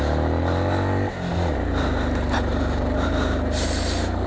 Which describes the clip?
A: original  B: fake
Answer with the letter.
A